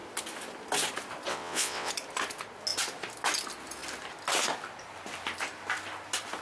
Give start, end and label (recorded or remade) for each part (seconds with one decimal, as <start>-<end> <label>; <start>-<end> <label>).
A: 0.0-1.3 recorded; 1.3-1.9 remade; 1.9-6.4 recorded